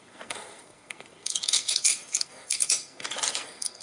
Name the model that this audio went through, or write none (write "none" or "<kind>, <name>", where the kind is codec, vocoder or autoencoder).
codec, SNAC